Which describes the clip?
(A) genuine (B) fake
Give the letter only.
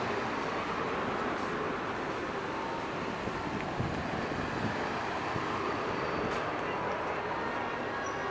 A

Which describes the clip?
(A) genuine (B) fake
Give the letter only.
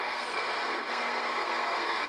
B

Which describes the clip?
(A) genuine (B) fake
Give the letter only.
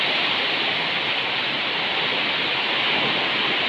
A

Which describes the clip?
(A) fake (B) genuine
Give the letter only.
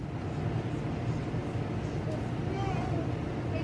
B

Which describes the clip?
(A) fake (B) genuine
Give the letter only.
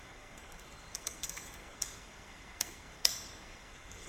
A